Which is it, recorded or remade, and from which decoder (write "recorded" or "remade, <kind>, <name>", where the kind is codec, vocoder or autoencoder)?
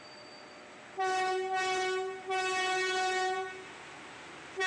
recorded